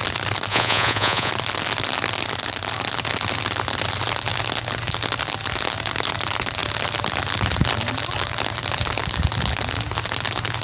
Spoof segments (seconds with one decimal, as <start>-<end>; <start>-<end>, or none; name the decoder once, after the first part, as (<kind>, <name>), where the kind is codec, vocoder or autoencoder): 0.5-1.3 (vocoder, Vocos)